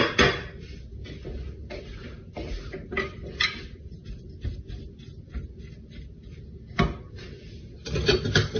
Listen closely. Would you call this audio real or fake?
real